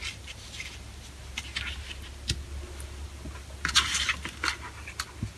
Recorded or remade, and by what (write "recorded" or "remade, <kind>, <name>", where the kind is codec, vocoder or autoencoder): recorded